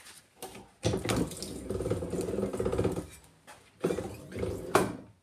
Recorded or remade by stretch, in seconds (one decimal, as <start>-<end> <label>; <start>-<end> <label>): 0.0-5.2 recorded